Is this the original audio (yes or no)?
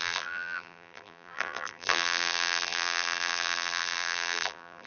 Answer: no